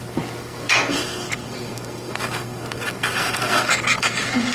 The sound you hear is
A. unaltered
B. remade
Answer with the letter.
B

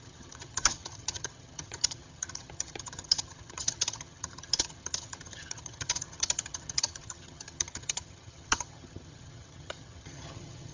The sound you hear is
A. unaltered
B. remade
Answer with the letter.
B